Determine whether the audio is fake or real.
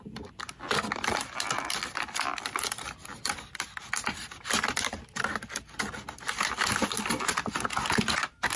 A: real